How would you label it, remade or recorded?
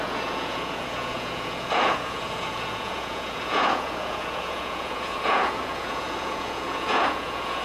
remade